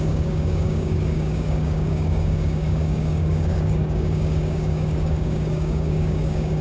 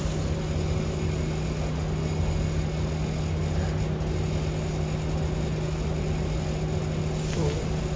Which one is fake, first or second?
first